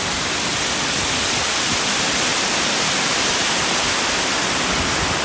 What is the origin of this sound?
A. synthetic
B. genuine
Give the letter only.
B